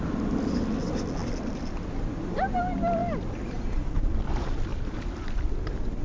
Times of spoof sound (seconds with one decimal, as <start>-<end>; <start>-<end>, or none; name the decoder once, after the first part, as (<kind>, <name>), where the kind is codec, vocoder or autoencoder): 1.2-2.6 (vocoder, BigVGAN v2); 3.0-3.8; 4.7-5.5